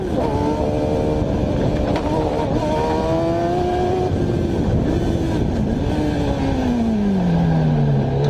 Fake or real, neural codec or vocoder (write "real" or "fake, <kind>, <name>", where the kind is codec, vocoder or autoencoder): real